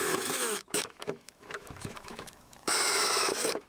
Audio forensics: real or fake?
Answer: fake